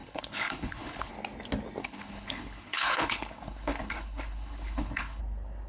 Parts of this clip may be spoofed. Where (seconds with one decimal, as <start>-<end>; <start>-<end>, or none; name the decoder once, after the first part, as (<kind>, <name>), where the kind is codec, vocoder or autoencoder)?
0.0-1.1 (codec, HILCodec); 1.8-5.2

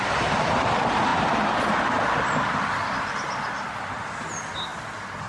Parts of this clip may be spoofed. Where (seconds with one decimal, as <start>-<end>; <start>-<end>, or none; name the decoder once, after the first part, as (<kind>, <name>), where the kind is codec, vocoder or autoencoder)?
none

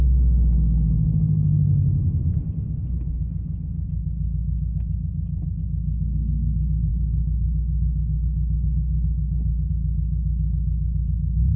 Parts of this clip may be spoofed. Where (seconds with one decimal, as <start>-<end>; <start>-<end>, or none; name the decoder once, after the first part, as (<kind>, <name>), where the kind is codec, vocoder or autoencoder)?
6.9-9.7 (codec, HILCodec)